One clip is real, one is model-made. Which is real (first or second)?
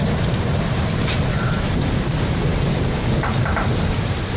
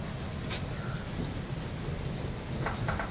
second